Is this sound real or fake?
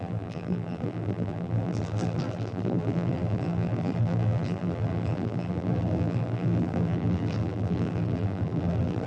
fake